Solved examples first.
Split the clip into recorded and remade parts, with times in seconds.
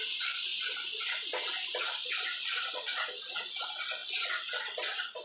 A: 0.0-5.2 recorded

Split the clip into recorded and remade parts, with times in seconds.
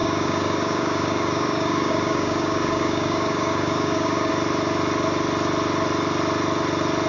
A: 0.0-4.3 remade; 4.3-7.1 recorded